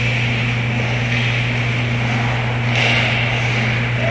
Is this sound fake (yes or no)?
no